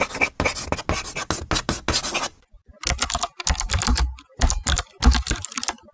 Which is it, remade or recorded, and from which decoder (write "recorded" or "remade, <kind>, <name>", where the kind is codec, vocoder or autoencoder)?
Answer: recorded